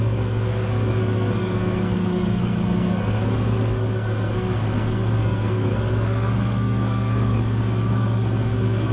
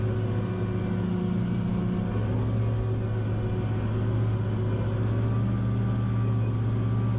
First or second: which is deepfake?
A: first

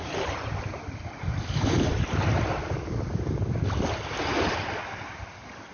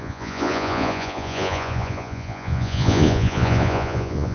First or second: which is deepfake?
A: second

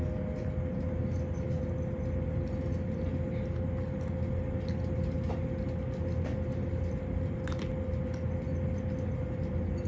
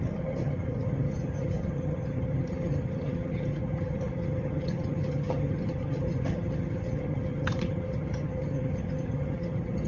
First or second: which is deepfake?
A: second